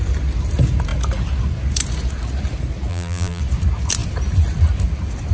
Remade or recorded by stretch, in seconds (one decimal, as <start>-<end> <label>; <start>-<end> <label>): 0.0-2.9 recorded; 2.9-3.4 remade; 3.4-5.3 recorded